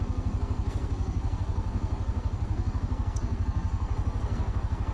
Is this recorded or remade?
remade